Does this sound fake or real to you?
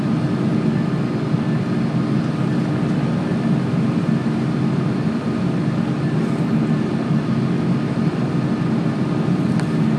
real